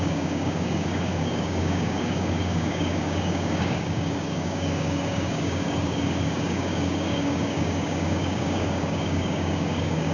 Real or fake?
fake